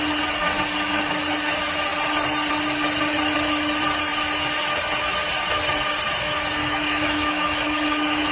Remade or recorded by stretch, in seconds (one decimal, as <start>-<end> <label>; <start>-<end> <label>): 0.0-6.6 recorded; 6.6-8.3 remade